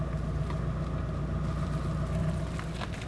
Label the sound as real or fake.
real